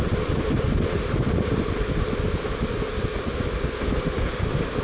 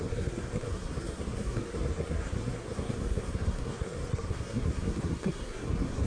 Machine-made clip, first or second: second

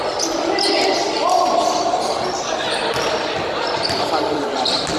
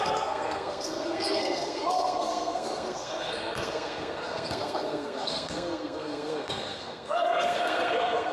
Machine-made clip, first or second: second